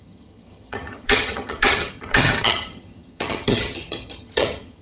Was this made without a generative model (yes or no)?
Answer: no